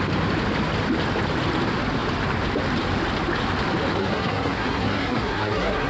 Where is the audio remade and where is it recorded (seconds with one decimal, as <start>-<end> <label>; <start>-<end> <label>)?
0.0-4.0 recorded; 4.0-5.9 remade